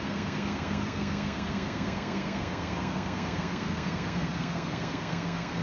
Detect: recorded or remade remade